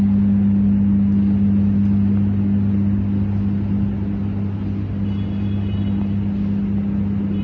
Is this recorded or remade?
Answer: recorded